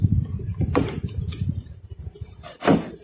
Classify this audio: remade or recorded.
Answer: remade